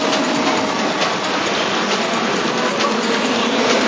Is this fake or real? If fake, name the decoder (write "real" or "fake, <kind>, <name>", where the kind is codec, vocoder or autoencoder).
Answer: real